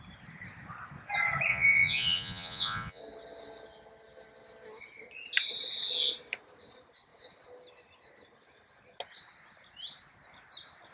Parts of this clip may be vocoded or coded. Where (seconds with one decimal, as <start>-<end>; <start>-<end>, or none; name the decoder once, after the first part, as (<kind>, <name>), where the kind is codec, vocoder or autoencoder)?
1.5-3.0 (vocoder, Vocos)